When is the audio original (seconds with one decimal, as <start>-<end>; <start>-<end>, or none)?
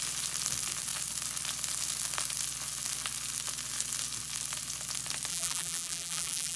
0.0-5.3